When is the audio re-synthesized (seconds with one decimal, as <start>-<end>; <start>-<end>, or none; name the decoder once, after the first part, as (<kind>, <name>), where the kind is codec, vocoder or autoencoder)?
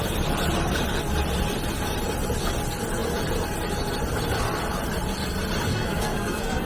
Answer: 5.7-6.7 (codec, SNAC)